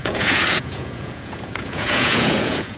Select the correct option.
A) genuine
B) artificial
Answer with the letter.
B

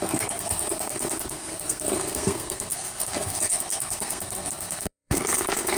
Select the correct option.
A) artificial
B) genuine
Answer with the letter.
A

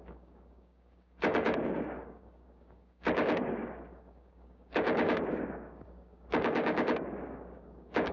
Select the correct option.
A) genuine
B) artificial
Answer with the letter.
B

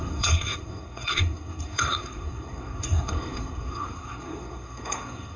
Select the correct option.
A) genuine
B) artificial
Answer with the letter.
B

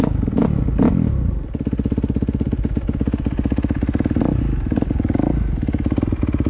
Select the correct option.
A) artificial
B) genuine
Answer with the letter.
B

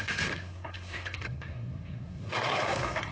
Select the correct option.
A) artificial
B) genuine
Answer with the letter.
A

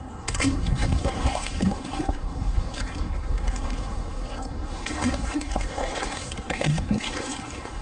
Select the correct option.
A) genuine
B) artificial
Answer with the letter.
B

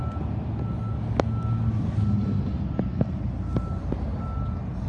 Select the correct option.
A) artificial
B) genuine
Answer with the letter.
B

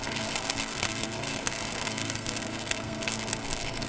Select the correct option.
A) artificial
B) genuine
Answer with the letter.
A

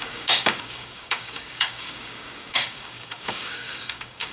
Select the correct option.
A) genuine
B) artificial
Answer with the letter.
B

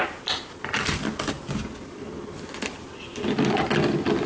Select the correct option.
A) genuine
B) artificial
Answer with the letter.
A